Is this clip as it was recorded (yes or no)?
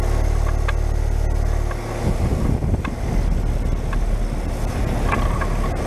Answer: yes